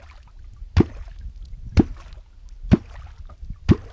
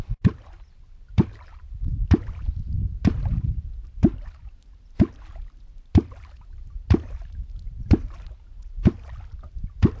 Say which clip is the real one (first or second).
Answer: first